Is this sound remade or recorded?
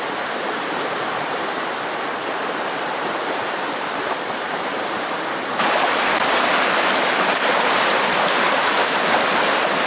remade